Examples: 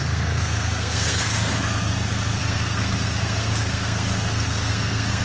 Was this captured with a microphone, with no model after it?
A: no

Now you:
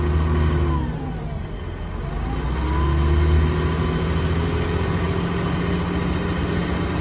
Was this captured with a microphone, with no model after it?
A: yes